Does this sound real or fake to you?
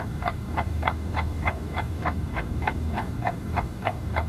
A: fake